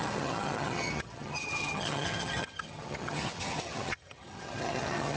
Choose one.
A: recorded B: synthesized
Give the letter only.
B